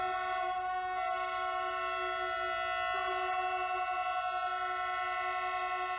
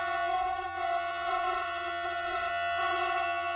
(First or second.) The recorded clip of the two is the first